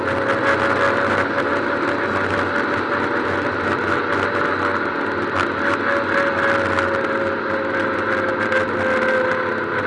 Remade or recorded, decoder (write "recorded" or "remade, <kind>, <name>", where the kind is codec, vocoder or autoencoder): recorded